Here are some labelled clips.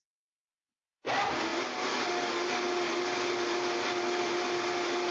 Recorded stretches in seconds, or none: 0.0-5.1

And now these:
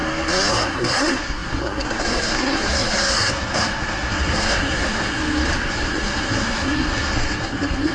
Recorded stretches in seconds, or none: 0.0-0.5; 5.2-5.7

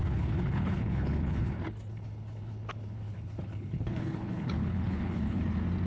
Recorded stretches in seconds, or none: 1.5-1.9; 5.4-5.9

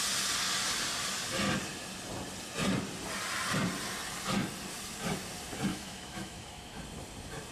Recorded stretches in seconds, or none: 0.0-5.7; 6.8-7.5

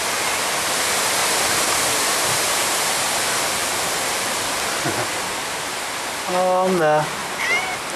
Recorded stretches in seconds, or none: 0.0-1.2; 2.9-7.2

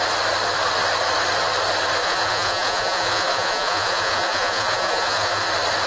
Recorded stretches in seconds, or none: 0.0-2.0; 5.5-5.9

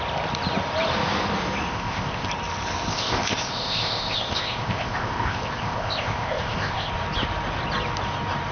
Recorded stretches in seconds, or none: 0.0-1.7; 2.3-2.9; 6.9-8.5

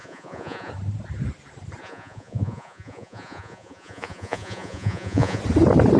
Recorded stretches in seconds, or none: 0.7-1.8; 5.4-6.0